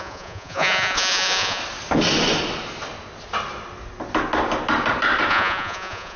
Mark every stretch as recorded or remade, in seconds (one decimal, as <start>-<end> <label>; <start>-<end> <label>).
0.0-1.6 remade; 1.6-5.3 recorded; 5.3-6.2 remade